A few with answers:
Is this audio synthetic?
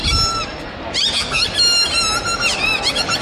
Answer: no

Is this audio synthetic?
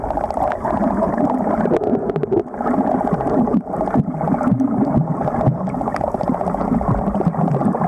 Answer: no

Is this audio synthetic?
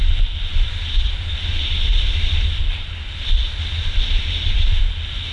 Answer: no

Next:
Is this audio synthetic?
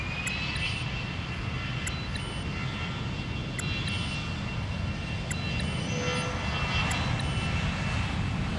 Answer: no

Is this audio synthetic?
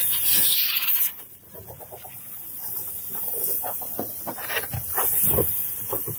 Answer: yes